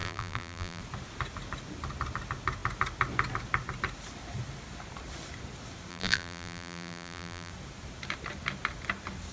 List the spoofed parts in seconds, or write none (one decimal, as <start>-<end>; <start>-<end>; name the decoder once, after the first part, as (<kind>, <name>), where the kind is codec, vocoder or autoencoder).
0.0-0.8 (vocoder, BigVGAN v2); 5.9-7.5